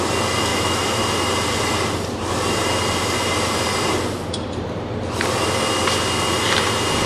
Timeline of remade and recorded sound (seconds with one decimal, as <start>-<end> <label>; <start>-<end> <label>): 0.0-0.5 recorded; 0.5-1.0 remade; 1.0-7.1 recorded